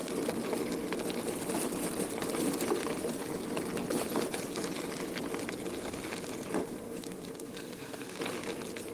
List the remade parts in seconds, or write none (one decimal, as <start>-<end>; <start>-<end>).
6.6-8.2